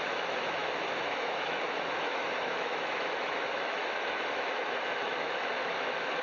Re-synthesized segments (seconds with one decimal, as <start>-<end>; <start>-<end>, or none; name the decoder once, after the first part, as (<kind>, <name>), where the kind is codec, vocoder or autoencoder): 0.0-6.2 (autoencoder, DAC-VAE)